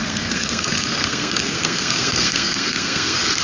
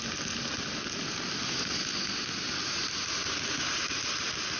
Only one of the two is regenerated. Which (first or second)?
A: first